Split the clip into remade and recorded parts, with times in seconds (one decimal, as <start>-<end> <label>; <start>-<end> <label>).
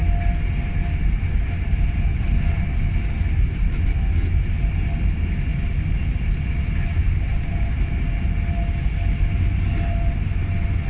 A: 0.0-10.9 recorded